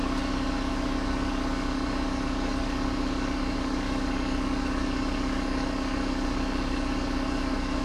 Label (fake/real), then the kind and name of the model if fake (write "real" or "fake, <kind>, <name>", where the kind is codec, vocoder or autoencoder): fake, codec, DAC